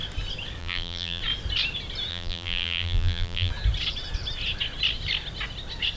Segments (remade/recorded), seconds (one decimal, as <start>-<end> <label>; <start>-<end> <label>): 0.0-0.6 recorded; 0.6-1.2 remade; 1.2-2.1 recorded; 2.1-3.5 remade; 3.5-6.0 recorded